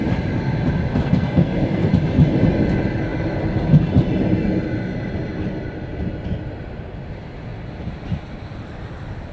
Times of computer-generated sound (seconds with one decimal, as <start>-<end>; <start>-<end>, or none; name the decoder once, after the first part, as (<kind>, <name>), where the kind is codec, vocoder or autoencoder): 0.9-1.9 (codec, SNAC)

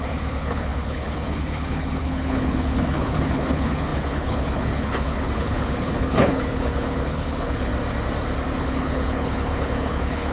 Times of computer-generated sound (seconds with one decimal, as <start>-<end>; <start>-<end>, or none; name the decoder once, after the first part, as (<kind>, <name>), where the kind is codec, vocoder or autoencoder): 0.0-7.7 (codec, HILCodec); 8.6-10.3

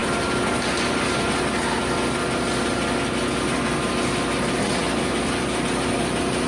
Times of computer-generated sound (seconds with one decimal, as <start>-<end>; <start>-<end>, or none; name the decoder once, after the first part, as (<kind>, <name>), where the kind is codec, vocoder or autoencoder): none

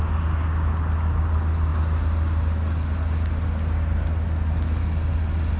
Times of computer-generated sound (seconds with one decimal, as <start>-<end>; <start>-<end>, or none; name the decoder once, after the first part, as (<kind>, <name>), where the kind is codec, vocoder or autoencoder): none

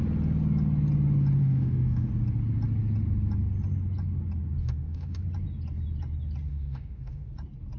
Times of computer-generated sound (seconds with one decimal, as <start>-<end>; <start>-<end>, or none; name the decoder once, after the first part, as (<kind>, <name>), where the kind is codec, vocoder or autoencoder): 1.4-2.1 (autoencoder, DAC-VAE); 4.6-5.2; 6.5-7.3

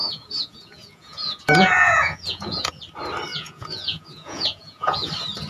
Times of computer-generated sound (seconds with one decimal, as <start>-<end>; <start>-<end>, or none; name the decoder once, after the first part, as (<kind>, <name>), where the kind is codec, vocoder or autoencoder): 0.0-2.8 (vocoder, Vocos); 3.3-5.1